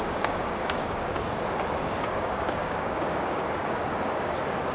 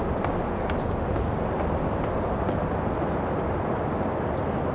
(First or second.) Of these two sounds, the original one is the second